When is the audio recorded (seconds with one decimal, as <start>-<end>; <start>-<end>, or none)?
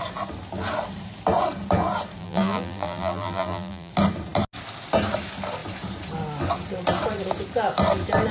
0.0-2.2; 3.9-8.3